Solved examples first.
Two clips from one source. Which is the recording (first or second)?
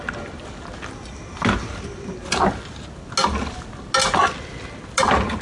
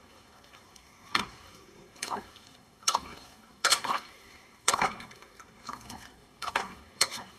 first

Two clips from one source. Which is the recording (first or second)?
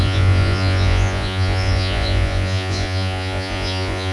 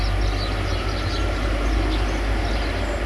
second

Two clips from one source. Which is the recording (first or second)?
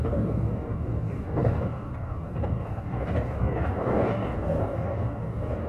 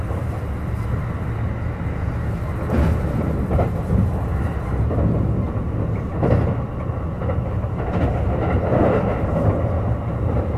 second